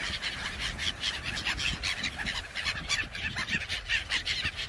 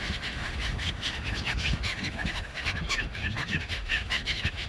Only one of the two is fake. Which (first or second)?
second